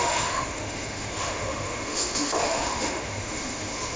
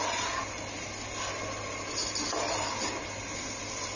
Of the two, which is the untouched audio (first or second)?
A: second